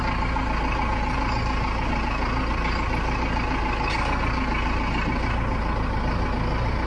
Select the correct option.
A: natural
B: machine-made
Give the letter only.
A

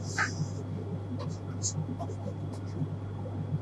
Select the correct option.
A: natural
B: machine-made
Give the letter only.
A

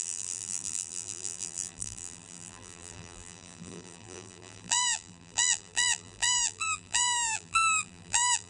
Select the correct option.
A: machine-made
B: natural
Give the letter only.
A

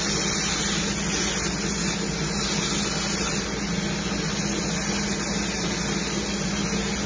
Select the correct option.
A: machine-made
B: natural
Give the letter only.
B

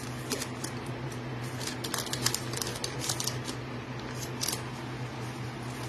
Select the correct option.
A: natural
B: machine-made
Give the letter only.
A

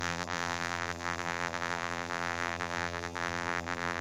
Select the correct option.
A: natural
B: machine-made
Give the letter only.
B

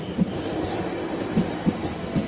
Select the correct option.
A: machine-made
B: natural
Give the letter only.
B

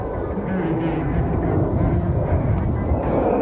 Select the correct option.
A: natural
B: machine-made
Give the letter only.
A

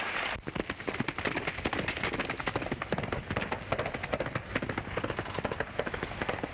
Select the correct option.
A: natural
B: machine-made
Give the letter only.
A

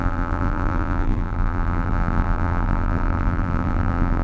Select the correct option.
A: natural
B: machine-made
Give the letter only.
B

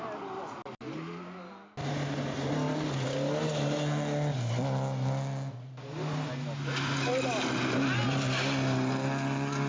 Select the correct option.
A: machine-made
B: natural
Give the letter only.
B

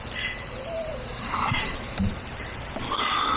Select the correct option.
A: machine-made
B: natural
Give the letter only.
A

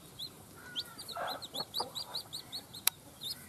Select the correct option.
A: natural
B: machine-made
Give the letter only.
B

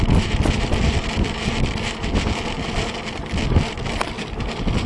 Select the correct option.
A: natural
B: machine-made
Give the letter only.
B